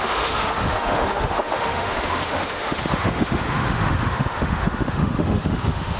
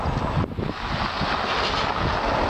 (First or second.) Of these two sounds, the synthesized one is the first